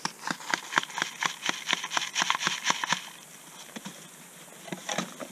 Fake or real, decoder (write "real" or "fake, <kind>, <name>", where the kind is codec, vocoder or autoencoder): real